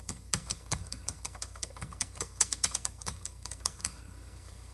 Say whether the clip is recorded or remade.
remade